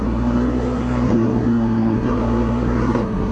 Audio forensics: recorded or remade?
remade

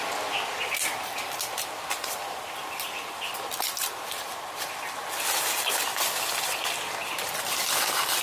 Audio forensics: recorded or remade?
remade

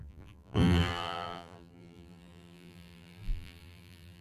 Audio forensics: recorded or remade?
remade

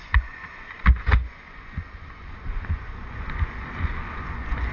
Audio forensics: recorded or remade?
remade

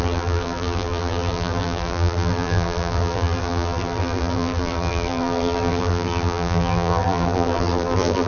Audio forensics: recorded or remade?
remade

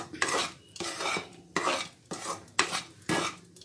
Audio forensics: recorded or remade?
recorded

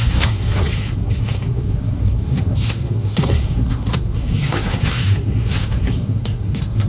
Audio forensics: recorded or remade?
remade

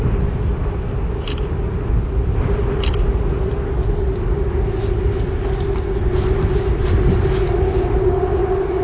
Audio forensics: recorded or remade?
recorded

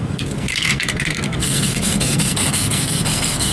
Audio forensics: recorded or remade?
remade